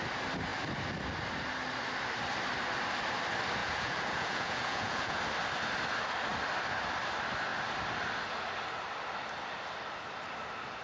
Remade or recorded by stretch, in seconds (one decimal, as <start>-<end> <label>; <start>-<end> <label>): 0.0-3.6 recorded; 3.6-5.2 remade; 5.2-10.8 recorded